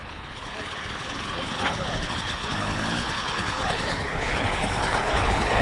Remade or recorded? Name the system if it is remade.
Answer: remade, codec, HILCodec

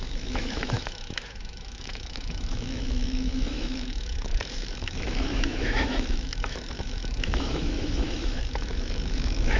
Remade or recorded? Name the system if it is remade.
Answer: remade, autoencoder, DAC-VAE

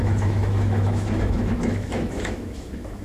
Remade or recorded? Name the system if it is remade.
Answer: remade, autoencoder, DAC-VAE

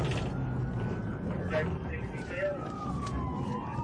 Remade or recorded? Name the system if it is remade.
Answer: recorded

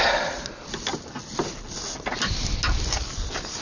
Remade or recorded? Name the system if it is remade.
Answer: recorded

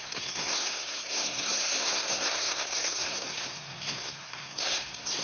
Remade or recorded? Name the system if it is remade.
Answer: remade, codec, SNAC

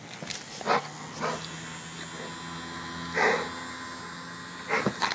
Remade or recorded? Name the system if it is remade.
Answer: recorded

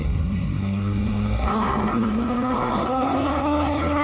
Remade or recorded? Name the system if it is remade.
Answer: remade, codec, SNAC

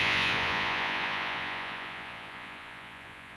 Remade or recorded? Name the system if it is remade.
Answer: remade, vocoder, Vocos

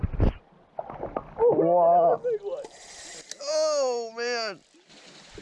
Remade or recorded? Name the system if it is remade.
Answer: recorded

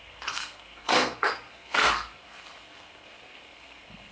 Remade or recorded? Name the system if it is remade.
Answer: remade, codec, SNAC